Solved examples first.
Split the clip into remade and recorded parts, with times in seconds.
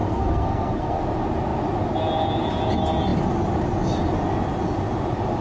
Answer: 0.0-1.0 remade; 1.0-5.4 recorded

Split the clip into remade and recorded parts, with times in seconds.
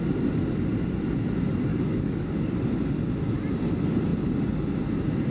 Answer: 0.0-1.7 recorded; 1.7-2.5 remade; 2.5-5.3 recorded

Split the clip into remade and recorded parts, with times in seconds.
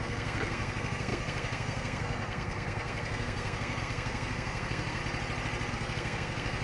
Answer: 0.0-5.0 remade; 5.0-5.7 recorded; 5.7-6.6 remade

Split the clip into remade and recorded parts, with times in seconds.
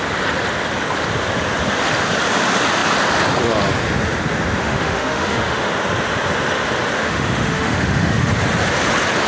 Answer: 0.0-4.6 recorded; 4.6-5.7 remade; 5.7-7.0 recorded; 7.0-8.3 remade; 8.3-9.3 recorded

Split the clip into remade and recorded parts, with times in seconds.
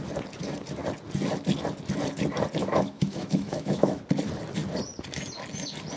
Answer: 0.0-2.6 recorded; 2.6-4.0 remade; 4.0-6.0 recorded